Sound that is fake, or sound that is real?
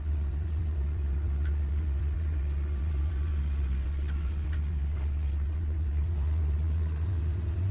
fake